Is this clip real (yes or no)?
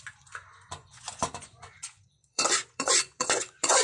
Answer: no